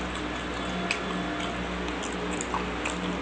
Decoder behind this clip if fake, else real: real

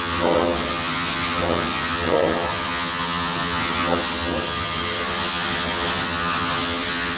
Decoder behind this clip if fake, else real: fake, vocoder, HiFi-GAN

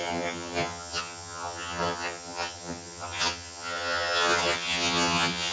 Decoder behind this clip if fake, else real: fake, vocoder, HiFi-GAN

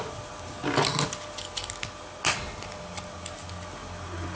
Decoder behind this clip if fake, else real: real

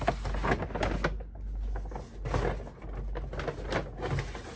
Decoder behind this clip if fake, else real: real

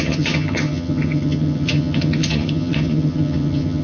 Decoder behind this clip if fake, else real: fake, vocoder, HiFi-GAN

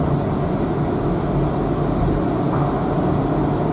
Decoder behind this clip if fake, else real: real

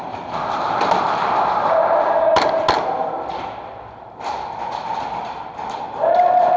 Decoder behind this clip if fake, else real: real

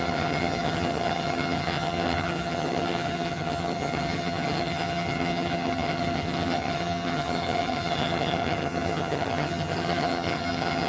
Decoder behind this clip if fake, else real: fake, vocoder, HiFi-GAN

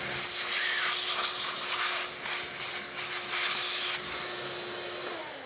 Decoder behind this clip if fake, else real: real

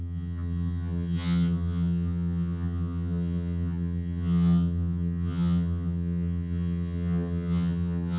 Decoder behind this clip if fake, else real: fake, vocoder, HiFi-GAN